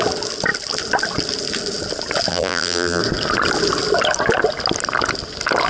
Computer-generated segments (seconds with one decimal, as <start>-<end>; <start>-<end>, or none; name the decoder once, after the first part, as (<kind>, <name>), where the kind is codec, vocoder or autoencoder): 2.3-3.0 (vocoder, BigVGAN v2)